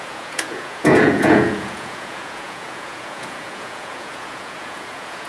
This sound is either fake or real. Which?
fake